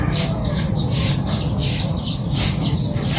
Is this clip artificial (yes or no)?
yes